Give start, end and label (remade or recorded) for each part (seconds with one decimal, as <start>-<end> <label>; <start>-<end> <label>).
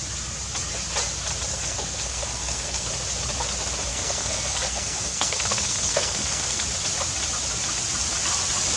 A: 0.0-1.5 recorded; 1.5-2.9 remade; 2.9-3.9 recorded; 3.9-6.6 remade; 6.6-8.8 recorded